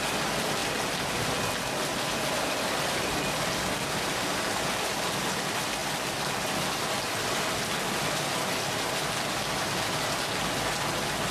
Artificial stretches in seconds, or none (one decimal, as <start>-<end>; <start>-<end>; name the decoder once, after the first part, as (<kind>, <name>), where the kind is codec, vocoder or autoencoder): none